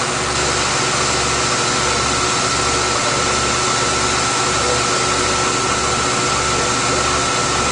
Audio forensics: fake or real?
real